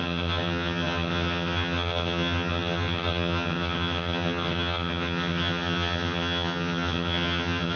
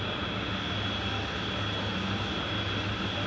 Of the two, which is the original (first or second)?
second